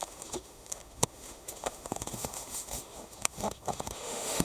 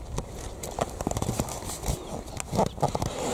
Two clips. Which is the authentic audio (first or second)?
second